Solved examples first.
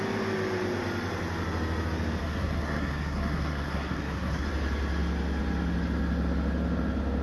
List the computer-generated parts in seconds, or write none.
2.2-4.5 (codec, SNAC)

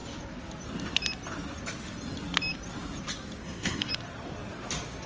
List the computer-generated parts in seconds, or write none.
3.4-3.9 (codec, SNAC)

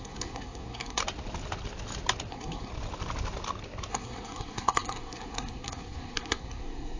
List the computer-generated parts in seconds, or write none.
0.0-1.0 (codec, SNAC); 2.3-2.7; 3.9-7.0